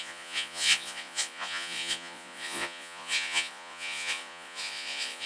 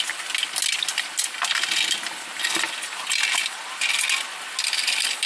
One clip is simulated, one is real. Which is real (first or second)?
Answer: second